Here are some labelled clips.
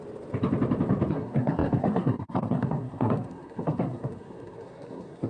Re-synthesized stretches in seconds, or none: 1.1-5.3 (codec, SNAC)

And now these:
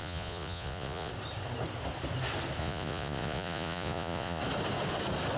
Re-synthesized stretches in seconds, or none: 0.0-1.1 (vocoder, Vocos); 2.6-4.4

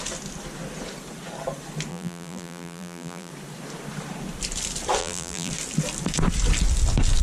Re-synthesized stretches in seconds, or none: 1.9-3.3 (vocoder, BigVGAN v2); 5.0-5.5

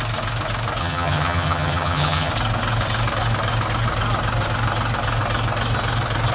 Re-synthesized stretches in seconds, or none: 0.8-2.3 (vocoder, HiFi-GAN)

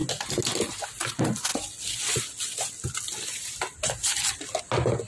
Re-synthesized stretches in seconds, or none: none

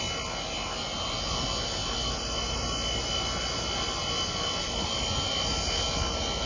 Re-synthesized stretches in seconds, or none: none